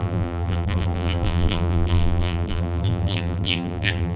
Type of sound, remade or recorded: remade